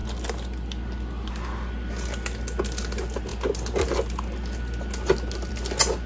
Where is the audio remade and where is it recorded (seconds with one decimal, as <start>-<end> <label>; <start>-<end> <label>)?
0.0-6.1 recorded

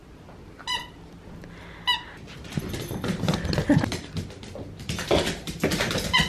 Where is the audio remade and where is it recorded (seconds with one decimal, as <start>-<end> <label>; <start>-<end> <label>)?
0.0-5.7 recorded; 5.7-6.3 remade

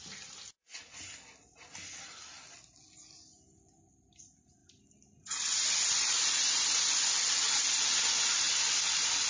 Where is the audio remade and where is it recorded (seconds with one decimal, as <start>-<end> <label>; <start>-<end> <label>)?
0.0-9.3 recorded

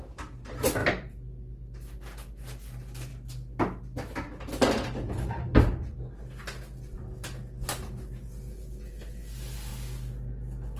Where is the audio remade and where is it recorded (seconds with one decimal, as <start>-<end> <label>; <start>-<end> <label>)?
0.0-0.8 recorded; 0.8-1.8 remade; 1.8-10.8 recorded

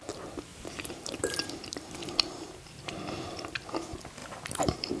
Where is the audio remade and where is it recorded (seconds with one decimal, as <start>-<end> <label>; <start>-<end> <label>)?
0.0-0.5 recorded; 0.5-3.5 remade; 3.5-4.2 recorded; 4.2-5.0 remade

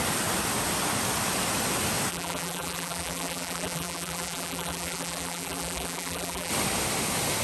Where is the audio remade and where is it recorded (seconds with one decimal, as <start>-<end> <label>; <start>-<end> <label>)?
0.0-2.1 recorded; 2.1-6.5 remade; 6.5-7.4 recorded